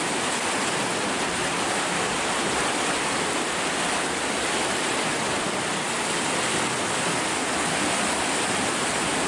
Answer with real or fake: real